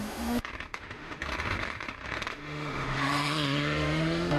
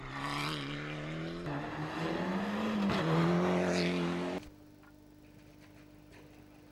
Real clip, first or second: second